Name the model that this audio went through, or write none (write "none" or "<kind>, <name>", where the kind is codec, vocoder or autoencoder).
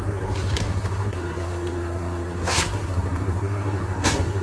codec, SNAC